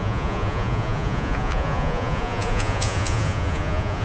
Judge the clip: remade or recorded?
remade